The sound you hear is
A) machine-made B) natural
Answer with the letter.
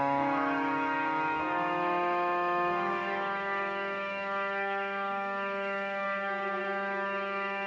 A